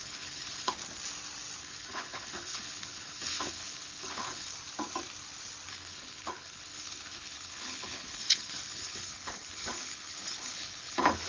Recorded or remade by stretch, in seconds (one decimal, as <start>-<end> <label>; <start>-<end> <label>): 0.0-0.8 remade; 0.8-1.6 recorded; 1.6-4.5 remade; 4.5-5.7 recorded; 5.7-11.3 remade